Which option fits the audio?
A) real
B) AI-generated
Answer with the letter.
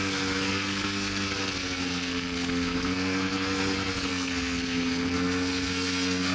B